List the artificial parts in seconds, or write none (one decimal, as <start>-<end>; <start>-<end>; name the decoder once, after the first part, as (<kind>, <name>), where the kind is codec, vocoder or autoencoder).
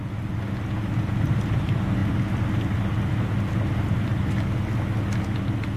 none